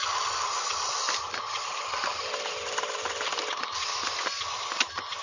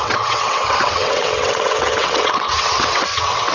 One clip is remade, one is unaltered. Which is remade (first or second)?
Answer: second